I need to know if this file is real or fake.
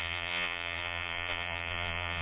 fake